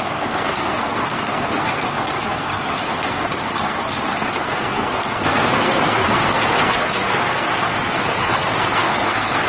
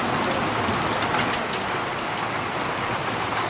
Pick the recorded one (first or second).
second